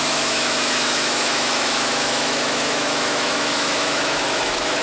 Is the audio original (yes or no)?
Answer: no